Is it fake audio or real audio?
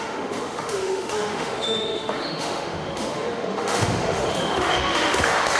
fake